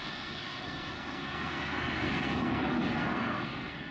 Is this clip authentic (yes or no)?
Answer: no